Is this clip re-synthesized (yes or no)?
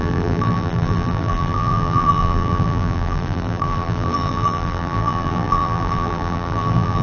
yes